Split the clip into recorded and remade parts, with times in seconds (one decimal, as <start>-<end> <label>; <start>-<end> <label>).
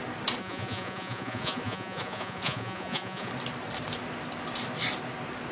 0.0-0.4 recorded; 0.4-3.3 remade; 3.3-5.5 recorded